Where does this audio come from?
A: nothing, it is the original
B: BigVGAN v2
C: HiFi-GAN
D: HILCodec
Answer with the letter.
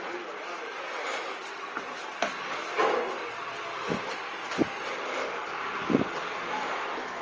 A